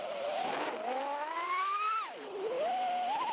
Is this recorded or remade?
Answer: recorded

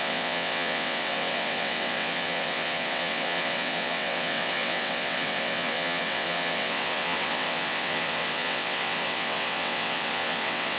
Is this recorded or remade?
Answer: remade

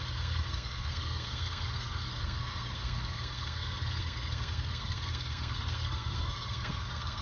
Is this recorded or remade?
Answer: remade